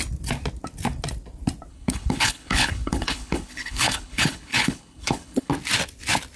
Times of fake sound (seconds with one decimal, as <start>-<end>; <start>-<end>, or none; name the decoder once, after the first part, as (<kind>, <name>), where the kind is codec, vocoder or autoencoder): 1.7-5.5 (codec, HILCodec)